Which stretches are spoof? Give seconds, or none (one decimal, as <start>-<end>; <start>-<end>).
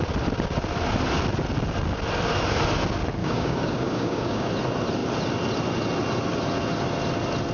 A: 3.2-4.5